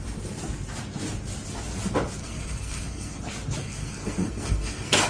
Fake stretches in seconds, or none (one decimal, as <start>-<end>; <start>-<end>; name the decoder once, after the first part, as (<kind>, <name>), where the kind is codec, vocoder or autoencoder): 2.2-3.2 (codec, SNAC); 3.6-5.1